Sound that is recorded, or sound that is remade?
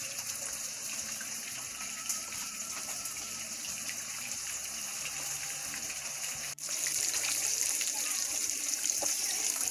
remade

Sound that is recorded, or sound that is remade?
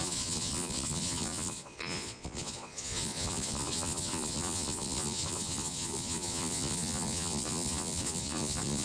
remade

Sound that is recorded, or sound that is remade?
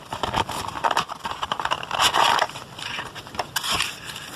recorded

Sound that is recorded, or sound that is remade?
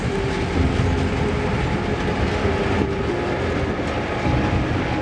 recorded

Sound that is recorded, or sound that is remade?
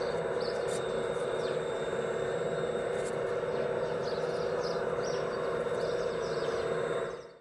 recorded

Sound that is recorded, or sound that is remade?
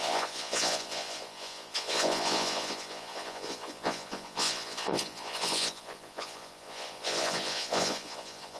remade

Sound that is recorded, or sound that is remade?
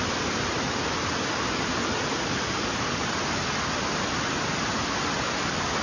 recorded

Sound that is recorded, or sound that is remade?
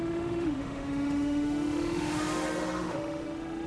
remade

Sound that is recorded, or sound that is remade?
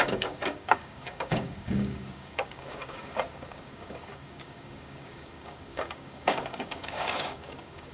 remade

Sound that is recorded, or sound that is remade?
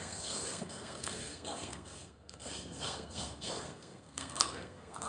remade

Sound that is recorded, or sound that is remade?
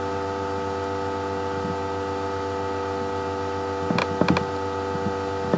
recorded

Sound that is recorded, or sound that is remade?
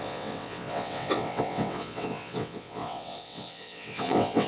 remade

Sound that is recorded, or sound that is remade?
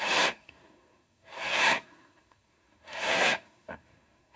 remade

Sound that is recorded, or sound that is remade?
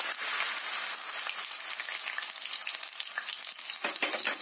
recorded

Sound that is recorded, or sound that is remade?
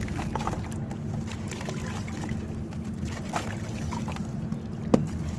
recorded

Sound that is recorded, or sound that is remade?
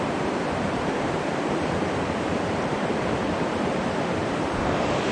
remade